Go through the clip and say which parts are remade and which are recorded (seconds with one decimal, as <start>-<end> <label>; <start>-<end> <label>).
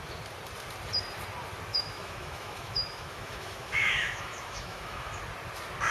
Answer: 0.0-1.7 recorded; 1.7-5.2 remade; 5.2-5.9 recorded